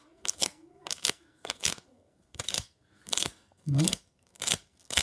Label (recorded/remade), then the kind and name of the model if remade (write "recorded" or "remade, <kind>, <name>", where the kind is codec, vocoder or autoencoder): remade, codec, SNAC